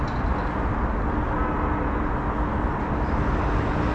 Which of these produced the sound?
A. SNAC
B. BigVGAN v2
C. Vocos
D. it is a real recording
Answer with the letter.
D